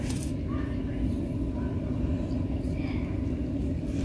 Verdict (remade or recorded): recorded